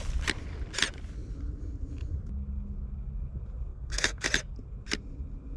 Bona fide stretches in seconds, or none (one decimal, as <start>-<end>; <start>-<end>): 0.0-3.7; 4.3-5.6